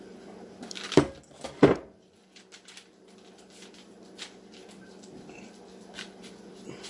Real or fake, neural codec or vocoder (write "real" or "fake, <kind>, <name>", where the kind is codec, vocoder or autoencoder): fake, vocoder, BigVGAN v2